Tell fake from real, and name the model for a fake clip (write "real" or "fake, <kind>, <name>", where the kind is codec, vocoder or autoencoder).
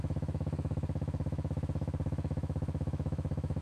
fake, autoencoder, DAC-VAE